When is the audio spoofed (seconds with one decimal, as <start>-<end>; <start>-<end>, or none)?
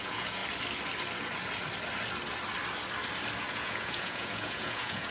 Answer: 0.0-0.4; 3.5-5.1